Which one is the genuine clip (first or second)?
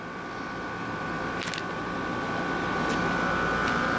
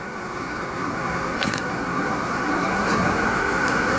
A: first